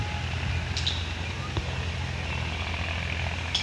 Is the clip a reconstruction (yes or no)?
no